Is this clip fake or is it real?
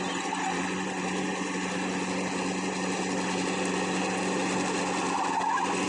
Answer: real